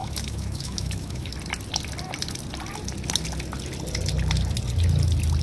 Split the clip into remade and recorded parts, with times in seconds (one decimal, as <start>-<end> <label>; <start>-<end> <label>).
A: 0.0-1.3 remade; 1.3-5.4 recorded